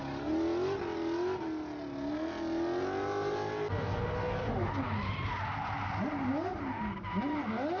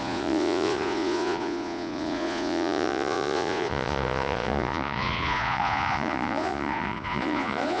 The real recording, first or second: first